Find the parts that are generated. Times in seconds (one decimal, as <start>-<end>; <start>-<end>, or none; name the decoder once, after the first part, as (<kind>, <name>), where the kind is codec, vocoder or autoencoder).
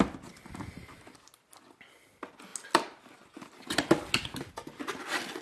none